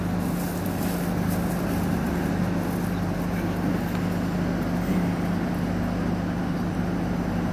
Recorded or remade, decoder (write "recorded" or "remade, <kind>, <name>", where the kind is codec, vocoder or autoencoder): recorded